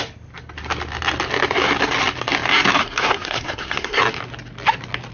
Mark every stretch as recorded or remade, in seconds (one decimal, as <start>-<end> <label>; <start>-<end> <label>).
0.0-2.8 recorded; 2.8-4.0 remade; 4.0-5.1 recorded

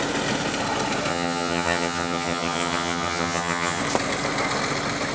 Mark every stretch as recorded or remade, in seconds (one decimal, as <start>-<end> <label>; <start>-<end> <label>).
0.0-1.1 recorded; 1.1-3.8 remade; 3.8-5.1 recorded

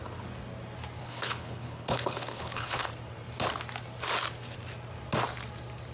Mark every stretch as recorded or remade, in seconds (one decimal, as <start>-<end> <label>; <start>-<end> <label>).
0.0-1.0 recorded; 1.0-2.9 remade; 2.9-5.9 recorded

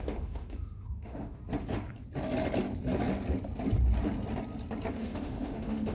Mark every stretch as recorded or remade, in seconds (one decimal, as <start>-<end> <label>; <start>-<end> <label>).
0.0-1.4 remade; 1.4-4.9 recorded; 4.9-5.9 remade

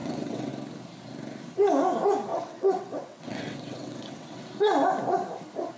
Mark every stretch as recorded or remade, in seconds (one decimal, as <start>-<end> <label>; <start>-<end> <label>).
0.0-0.5 remade; 0.5-2.3 recorded; 2.3-4.4 remade; 4.4-5.8 recorded

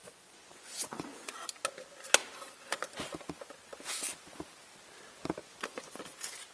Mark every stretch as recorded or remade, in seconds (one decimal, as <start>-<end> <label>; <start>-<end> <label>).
0.0-1.3 remade; 1.3-5.4 recorded; 5.4-6.0 remade; 6.0-6.5 recorded

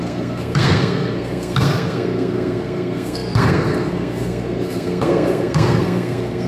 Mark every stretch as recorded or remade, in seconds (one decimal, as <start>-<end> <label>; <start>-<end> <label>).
0.0-6.5 remade